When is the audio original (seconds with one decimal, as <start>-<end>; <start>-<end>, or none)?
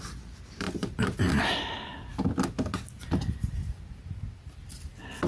0.0-0.8; 1.3-3.6; 4.6-5.3